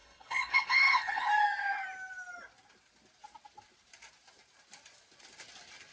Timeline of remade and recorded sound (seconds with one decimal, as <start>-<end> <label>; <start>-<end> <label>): 0.0-1.3 remade; 1.3-5.9 recorded